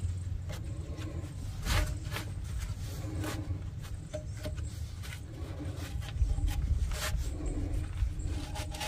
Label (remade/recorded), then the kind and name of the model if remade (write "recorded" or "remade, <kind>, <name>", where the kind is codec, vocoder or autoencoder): recorded